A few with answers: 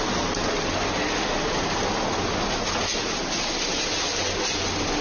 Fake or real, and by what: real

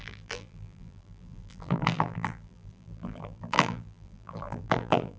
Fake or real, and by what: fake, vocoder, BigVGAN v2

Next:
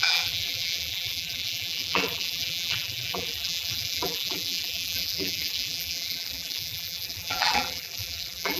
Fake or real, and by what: fake, vocoder, BigVGAN v2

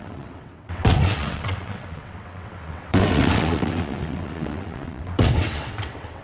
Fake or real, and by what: fake, vocoder, WaveNeXt